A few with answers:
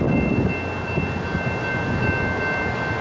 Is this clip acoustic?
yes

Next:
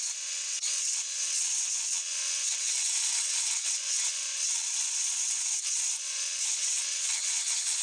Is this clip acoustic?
no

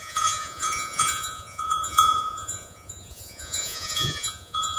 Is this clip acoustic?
no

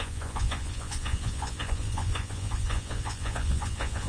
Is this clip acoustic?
no